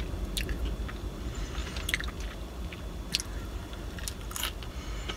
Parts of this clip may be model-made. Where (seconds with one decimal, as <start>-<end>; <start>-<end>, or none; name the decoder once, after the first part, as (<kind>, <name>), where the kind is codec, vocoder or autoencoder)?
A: none